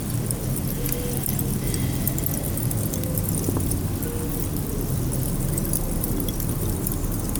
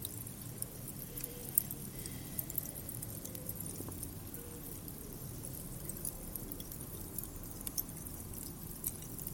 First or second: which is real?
first